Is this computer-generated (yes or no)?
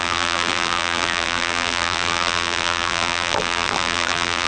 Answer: yes